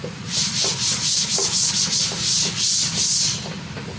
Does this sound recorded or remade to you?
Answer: recorded